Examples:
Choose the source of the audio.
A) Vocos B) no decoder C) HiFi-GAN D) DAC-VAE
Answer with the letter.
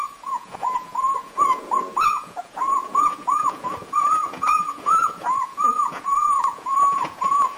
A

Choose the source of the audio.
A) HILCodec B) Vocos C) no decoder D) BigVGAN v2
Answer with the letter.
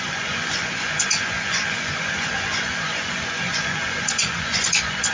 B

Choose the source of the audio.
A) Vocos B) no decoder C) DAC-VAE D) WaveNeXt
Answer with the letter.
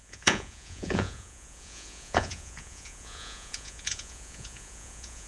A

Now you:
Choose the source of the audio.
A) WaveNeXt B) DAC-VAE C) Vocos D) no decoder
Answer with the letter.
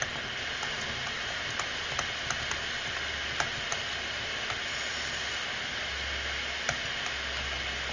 D